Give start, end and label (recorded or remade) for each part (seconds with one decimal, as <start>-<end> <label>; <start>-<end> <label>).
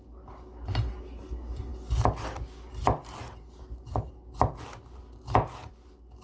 0.0-6.2 recorded